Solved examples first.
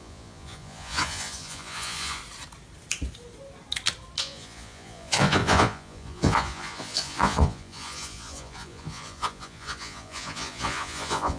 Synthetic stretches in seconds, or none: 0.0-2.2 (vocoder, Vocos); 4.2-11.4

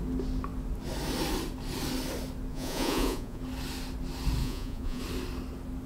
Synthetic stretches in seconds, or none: 2.5-3.4 (vocoder, Vocos); 4.4-5.0

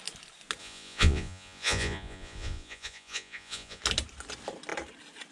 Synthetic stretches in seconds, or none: 0.6-3.8 (vocoder, Vocos)

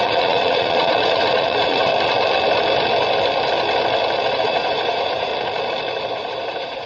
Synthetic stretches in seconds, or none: 0.0-1.9 (vocoder, Vocos); 4.3-5.3; 6.1-6.9

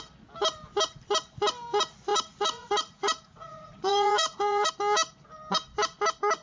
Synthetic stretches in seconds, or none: 2.1-4.7 (vocoder, Vocos)

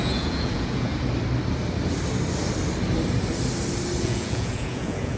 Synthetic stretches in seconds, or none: 0.0-0.9 (vocoder, Vocos); 4.0-5.2